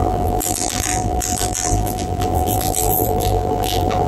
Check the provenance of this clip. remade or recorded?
remade